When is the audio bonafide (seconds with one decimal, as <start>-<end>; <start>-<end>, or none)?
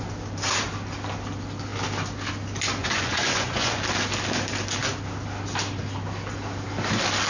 0.0-2.8; 3.8-7.3